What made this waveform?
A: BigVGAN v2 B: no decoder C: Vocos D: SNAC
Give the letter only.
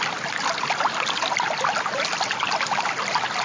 B